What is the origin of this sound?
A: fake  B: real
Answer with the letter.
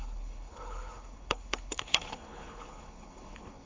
A